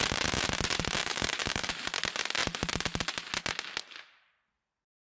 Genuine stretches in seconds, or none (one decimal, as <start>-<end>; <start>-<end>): 0.0-1.0; 1.7-5.0